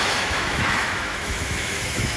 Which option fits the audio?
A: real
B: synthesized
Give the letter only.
B